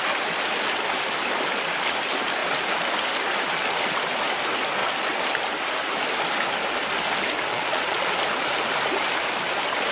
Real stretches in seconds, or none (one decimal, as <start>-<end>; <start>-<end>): 0.0-7.5; 8.1-9.9